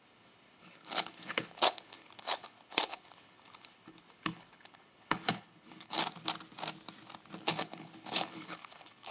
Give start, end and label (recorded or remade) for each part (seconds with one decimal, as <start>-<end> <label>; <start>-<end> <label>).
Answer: 0.0-6.0 remade; 6.0-7.4 recorded; 7.4-9.1 remade